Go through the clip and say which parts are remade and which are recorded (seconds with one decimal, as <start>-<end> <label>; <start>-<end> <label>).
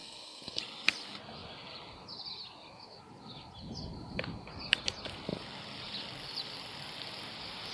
0.0-0.6 remade; 0.6-7.7 recorded